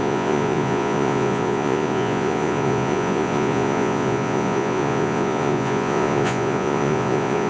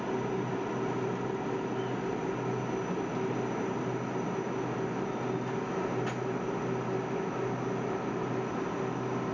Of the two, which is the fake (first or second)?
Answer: first